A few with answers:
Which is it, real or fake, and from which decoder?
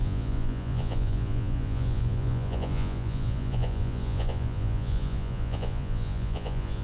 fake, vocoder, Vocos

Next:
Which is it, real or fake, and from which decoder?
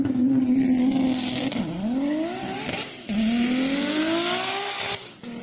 real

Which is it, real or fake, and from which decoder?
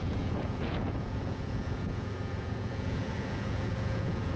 fake, vocoder, Vocos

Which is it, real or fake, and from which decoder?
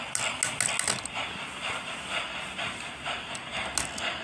real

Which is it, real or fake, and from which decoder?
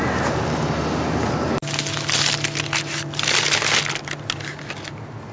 real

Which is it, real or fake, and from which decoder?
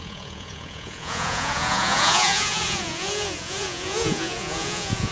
fake, vocoder, Vocos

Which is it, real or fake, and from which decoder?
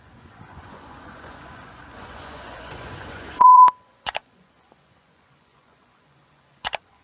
fake, vocoder, Vocos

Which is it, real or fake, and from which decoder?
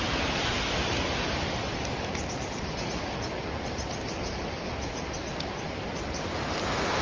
real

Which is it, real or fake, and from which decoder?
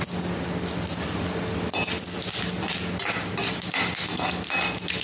real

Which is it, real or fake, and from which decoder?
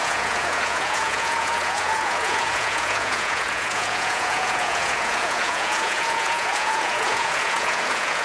fake, vocoder, Vocos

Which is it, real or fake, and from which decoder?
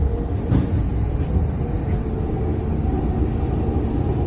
real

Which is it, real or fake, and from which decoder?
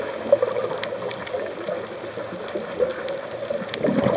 real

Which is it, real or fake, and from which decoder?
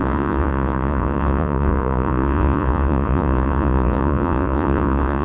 fake, vocoder, Vocos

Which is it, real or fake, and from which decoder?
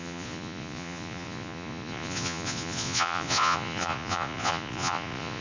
fake, vocoder, Vocos